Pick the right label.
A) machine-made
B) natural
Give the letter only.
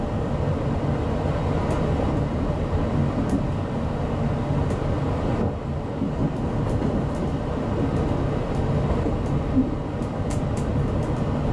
B